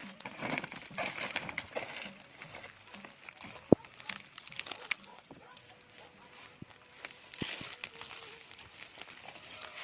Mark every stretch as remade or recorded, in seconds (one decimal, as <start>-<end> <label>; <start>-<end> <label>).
0.0-0.6 remade; 0.6-5.1 recorded; 5.1-5.7 remade; 5.7-9.8 recorded